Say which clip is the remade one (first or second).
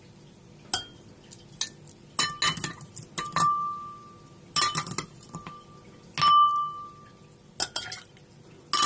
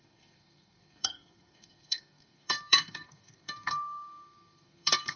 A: second